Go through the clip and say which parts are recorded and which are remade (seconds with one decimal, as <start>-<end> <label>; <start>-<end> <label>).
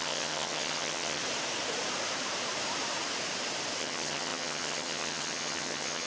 0.0-1.2 remade; 1.2-3.8 recorded; 3.8-6.1 remade